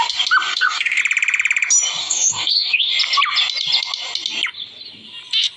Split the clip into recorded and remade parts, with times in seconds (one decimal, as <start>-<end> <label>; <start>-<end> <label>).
0.0-0.5 recorded; 0.5-1.0 remade; 1.0-2.0 recorded; 2.0-2.9 remade; 2.9-5.6 recorded